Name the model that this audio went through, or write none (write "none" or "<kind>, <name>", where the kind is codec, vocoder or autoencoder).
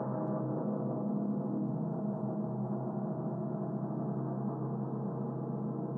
none